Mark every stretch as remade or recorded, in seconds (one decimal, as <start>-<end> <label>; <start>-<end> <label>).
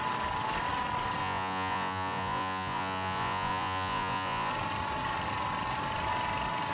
0.0-1.2 recorded; 1.2-4.5 remade; 4.5-6.7 recorded